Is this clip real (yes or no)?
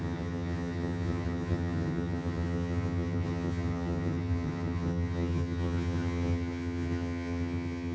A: no